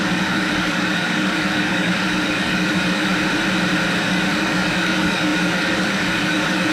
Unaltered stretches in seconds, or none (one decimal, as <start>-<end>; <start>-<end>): 3.1-4.0